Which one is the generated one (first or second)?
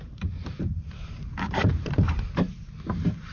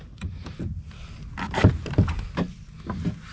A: first